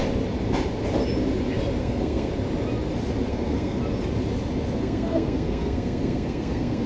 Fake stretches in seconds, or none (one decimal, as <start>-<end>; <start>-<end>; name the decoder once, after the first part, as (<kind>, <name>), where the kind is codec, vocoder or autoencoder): 1.8-2.3 (codec, SNAC); 3.3-3.8; 4.8-6.9